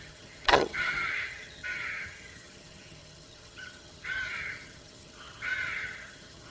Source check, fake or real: fake